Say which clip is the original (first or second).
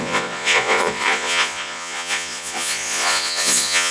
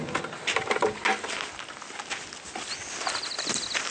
second